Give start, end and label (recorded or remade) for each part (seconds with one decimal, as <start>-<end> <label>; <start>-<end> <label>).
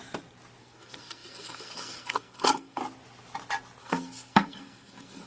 0.0-0.6 recorded; 0.6-2.8 remade; 2.8-3.8 recorded; 3.8-5.3 remade